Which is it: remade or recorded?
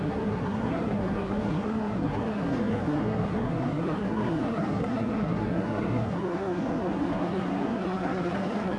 remade